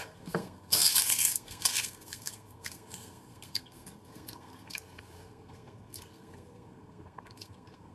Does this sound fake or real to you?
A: fake